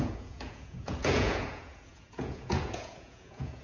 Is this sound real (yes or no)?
no